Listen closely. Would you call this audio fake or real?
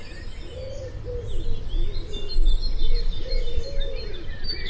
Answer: real